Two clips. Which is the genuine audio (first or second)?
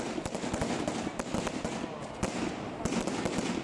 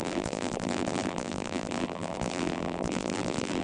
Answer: first